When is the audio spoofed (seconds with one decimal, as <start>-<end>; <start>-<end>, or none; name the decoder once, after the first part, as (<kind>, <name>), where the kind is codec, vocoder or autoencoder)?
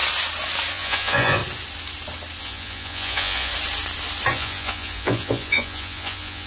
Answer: 0.7-1.4 (vocoder, Vocos); 2.4-3.5; 4.3-6.5